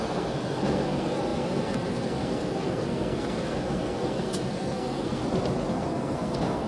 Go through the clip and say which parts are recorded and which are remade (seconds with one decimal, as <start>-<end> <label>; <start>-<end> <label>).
0.0-5.2 remade; 5.2-5.7 recorded; 5.7-6.7 remade